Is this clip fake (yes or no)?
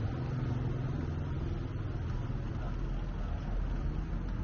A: no